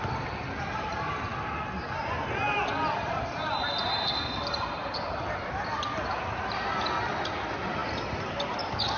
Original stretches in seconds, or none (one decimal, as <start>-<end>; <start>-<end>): 0.0-9.0